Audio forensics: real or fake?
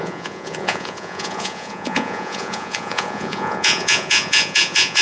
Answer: fake